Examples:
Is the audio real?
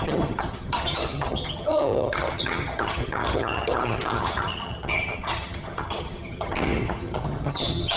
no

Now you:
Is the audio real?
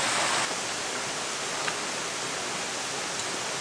yes